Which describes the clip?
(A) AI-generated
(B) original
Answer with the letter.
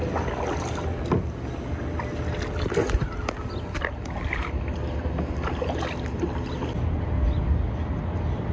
B